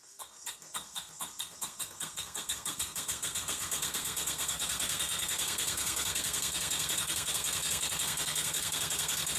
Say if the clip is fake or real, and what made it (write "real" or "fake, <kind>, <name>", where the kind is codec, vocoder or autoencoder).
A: fake, codec, SNAC